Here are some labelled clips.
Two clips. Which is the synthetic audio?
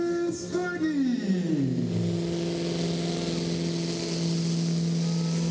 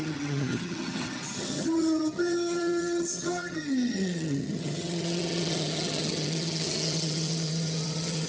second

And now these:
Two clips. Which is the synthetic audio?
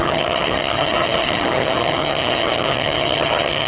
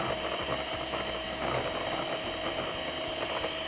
first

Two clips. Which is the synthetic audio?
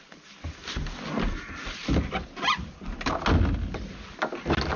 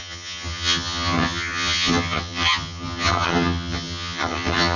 second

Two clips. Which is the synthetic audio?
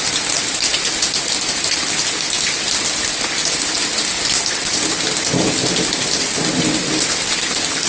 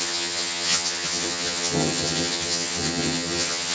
second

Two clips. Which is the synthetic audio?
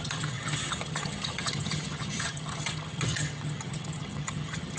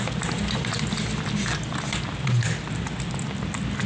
first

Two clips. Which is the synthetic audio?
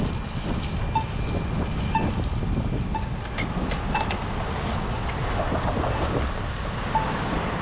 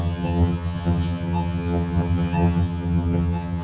second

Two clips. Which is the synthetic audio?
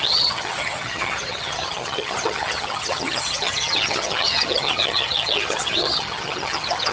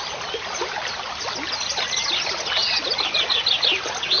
first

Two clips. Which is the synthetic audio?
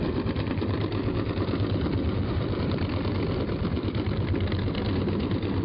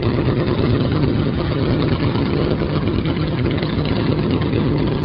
second